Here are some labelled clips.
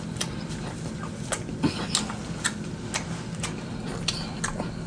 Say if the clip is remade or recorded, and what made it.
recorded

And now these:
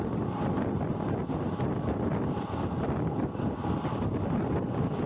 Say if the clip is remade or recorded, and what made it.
recorded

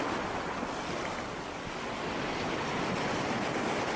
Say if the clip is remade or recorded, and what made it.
recorded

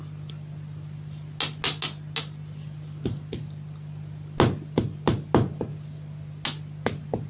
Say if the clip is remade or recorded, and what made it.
recorded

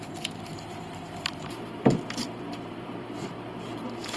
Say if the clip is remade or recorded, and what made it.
remade, vocoder, BigVGAN v2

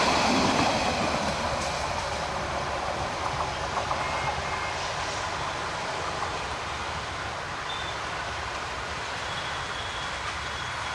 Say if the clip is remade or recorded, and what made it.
recorded